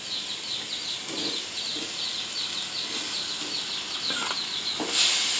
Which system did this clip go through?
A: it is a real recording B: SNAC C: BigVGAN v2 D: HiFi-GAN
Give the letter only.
A